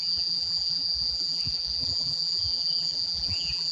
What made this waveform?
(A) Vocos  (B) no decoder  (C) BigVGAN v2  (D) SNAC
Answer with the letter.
C